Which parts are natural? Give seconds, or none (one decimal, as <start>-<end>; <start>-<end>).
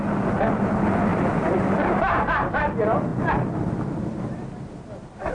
0.0-1.1; 2.7-5.3